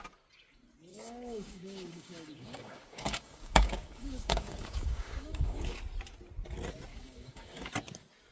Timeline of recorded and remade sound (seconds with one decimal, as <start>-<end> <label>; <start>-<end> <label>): 0.0-0.9 recorded; 0.9-5.8 remade; 5.8-6.9 recorded; 6.9-7.7 remade; 7.7-8.3 recorded